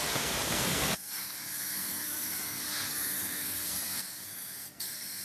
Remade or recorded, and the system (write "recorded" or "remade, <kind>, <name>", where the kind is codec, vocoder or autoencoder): remade, codec, SNAC